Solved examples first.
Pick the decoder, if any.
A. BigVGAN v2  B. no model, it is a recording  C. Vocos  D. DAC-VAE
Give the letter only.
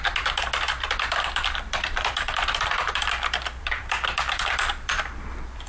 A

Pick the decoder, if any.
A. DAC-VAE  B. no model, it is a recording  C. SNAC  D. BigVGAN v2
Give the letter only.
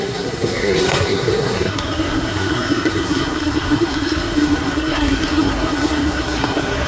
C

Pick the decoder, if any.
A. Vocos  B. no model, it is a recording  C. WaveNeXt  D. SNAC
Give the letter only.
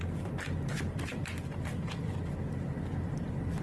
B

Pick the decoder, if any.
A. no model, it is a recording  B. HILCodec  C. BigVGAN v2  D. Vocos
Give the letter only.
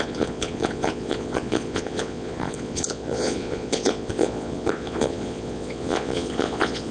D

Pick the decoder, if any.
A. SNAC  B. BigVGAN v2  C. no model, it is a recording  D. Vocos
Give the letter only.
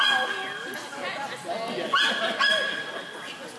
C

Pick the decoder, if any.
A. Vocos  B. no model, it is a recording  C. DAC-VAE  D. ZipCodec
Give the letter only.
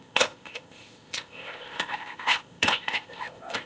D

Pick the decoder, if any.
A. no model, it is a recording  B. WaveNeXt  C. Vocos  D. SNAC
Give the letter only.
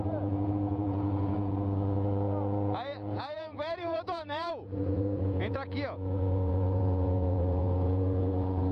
C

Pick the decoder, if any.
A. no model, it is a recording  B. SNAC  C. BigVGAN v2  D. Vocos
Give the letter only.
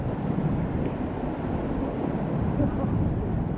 A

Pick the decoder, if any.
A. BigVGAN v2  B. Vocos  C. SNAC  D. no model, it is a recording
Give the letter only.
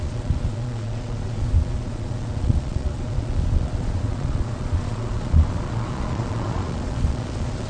B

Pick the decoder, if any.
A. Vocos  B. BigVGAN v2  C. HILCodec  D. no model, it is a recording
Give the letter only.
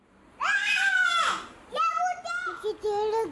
D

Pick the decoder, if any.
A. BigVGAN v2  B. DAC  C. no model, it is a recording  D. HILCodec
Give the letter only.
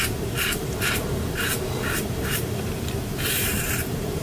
A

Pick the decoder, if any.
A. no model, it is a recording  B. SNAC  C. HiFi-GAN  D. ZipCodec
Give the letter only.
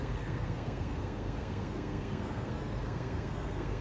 B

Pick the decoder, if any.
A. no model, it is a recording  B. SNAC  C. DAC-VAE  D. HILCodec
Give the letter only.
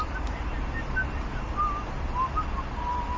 A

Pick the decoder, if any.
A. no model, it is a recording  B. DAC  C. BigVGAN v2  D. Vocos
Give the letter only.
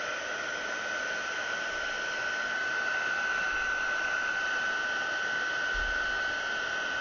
A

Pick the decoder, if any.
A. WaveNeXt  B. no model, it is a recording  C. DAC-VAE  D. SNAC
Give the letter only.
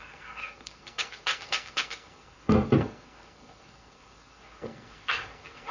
D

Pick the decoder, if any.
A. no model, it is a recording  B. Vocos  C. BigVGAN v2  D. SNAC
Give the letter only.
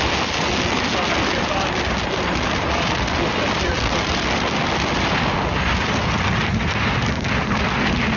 A